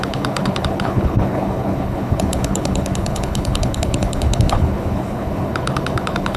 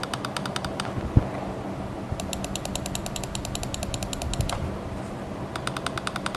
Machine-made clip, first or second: first